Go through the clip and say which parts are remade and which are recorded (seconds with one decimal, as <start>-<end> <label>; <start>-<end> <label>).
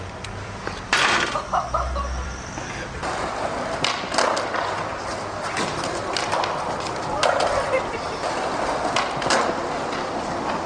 0.0-3.0 remade; 3.0-4.9 recorded; 4.9-6.0 remade; 6.0-10.7 recorded